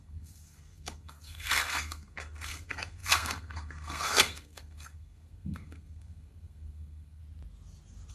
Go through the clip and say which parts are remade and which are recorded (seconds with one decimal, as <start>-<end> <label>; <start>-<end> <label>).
0.0-7.2 remade; 7.2-8.1 recorded